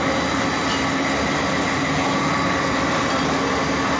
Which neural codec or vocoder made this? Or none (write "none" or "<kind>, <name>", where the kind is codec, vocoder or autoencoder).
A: none